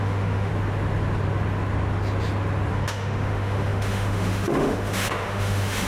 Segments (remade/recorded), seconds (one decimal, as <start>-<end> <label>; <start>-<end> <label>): 0.0-0.5 remade; 0.5-2.7 recorded; 2.7-5.9 remade